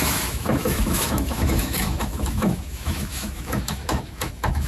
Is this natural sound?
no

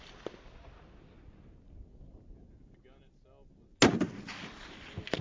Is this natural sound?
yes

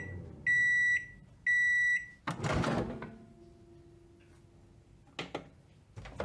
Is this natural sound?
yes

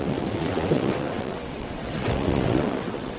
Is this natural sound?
no